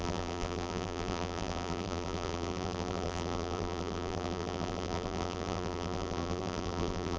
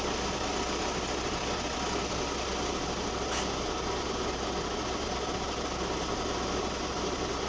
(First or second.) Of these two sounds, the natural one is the second